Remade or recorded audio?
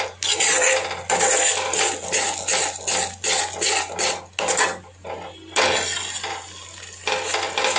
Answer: recorded